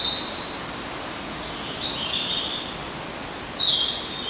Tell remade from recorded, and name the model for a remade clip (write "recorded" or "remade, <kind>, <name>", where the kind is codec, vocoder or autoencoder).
recorded